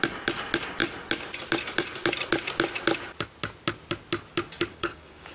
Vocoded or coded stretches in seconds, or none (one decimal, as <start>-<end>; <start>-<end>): 4.7-5.3